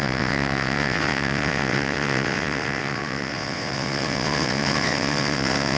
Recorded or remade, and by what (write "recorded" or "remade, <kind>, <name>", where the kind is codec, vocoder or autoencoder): remade, vocoder, WaveNeXt